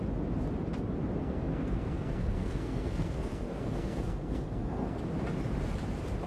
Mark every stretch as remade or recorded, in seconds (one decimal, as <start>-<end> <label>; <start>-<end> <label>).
0.0-1.2 recorded; 1.2-5.0 remade; 5.0-6.3 recorded